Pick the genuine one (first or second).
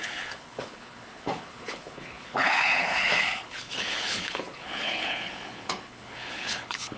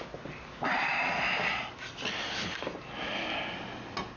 second